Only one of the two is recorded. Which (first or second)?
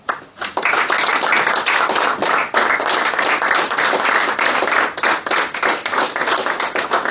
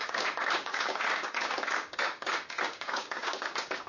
first